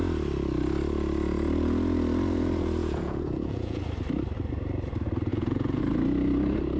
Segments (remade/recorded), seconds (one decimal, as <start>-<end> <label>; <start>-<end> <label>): 0.0-2.8 recorded; 2.8-3.8 remade; 3.8-5.3 recorded; 5.3-5.8 remade; 5.8-6.8 recorded